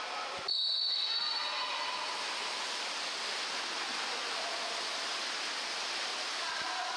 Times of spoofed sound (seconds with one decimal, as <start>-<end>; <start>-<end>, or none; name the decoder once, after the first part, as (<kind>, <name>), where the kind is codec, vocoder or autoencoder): none